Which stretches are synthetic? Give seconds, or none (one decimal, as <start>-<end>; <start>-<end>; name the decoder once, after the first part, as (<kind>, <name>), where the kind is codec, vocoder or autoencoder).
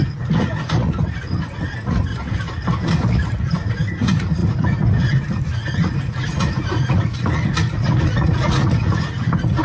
0.0-2.1 (vocoder, Vocos); 2.9-9.6